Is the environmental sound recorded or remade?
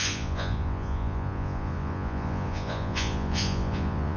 remade